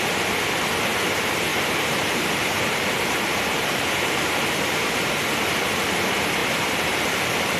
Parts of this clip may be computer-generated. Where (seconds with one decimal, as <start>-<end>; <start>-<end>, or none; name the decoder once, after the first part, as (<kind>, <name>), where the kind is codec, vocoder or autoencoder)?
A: 1.5-5.1 (vocoder, BigVGAN v2); 6.4-7.6